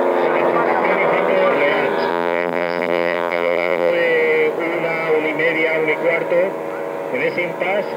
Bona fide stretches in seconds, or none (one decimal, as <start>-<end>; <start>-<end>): 0.0-2.1; 3.9-8.0